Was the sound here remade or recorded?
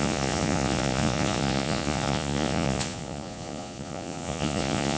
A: remade